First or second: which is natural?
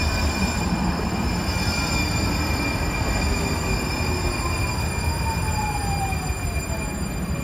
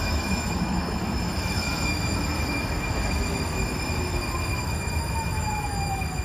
first